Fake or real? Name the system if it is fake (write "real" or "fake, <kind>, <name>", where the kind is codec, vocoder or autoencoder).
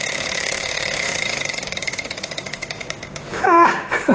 fake, codec, DAC